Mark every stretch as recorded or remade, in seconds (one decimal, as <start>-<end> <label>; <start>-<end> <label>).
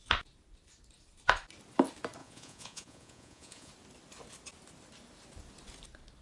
0.0-2.2 recorded; 2.2-3.7 remade; 3.7-6.2 recorded